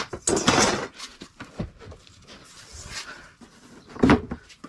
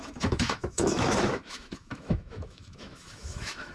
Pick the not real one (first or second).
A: second